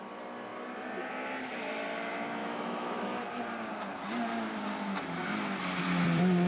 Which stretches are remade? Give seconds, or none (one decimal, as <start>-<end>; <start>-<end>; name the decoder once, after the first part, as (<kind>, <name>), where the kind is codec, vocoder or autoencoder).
2.4-3.4 (autoencoder, DAC-VAE)